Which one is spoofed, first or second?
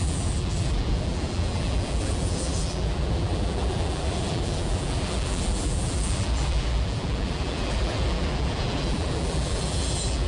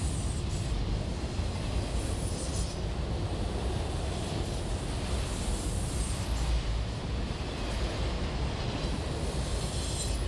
first